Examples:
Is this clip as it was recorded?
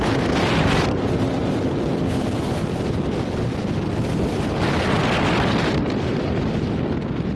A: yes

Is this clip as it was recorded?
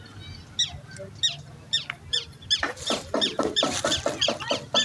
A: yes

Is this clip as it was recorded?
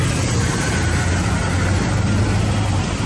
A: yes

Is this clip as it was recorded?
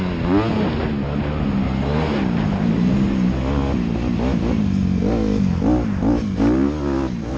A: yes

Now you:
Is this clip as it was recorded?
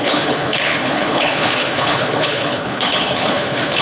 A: no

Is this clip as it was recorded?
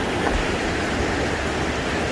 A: yes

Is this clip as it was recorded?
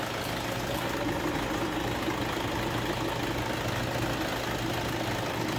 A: yes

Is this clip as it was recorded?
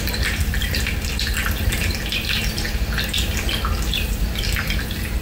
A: yes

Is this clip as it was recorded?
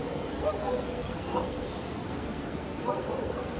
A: no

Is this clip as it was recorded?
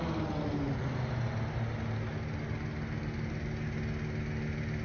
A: yes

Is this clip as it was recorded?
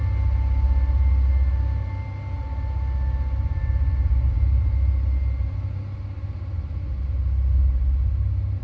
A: yes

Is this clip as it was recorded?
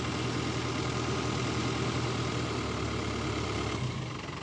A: yes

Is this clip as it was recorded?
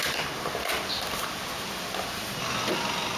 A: no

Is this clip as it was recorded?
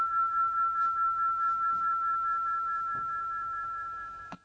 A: no